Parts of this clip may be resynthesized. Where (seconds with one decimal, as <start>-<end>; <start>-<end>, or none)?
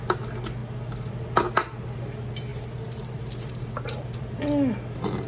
2.5-4.4